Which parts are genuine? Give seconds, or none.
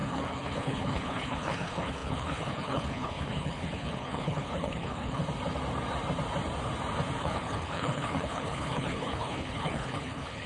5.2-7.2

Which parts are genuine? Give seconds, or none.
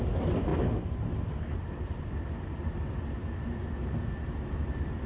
0.0-5.1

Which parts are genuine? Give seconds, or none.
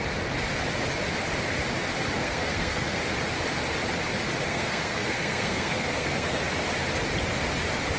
0.0-2.2; 3.0-4.5; 6.4-8.0